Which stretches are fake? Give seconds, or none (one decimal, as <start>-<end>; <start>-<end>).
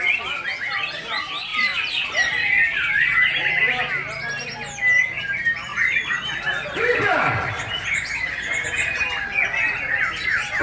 1.5-2.9; 5.7-8.3